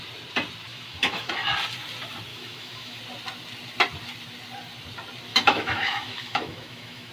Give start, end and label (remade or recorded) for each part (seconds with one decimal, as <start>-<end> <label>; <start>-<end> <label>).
0.0-0.7 recorded; 0.7-1.3 remade; 1.3-2.3 recorded; 2.3-3.0 remade; 3.0-5.3 recorded; 5.3-7.1 remade